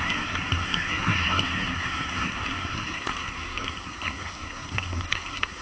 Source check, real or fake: fake